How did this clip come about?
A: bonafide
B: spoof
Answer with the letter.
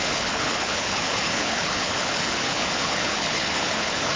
B